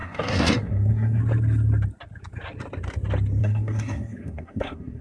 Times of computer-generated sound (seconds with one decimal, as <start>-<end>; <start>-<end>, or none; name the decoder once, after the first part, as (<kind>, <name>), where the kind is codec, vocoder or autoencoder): 0.0-1.2 (codec, SNAC); 3.4-5.0